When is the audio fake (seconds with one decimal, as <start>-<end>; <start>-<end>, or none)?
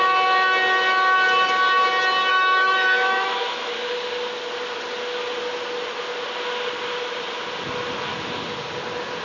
2.3-3.7